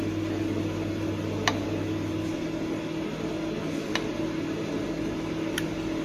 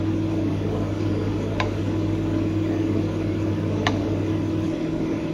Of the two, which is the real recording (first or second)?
first